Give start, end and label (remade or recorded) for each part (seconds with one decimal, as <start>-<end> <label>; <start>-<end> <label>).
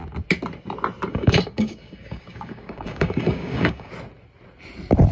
0.0-1.1 recorded; 1.1-3.9 remade; 3.9-5.1 recorded